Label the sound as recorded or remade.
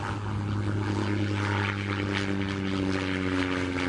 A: recorded